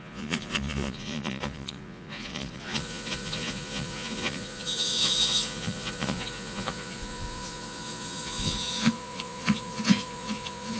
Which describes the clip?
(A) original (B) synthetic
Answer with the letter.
B